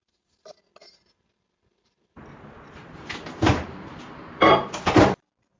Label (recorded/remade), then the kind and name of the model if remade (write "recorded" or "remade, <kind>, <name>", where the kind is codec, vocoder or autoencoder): recorded